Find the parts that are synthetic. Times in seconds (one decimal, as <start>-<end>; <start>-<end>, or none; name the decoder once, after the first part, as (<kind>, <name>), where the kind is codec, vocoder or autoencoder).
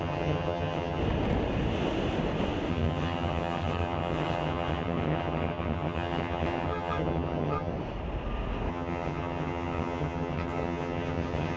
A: 0.0-1.0 (vocoder, HiFi-GAN); 2.7-7.7; 8.7-11.6